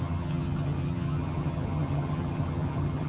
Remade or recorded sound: remade